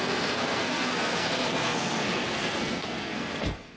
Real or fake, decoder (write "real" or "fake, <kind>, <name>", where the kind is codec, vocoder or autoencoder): fake, codec, SNAC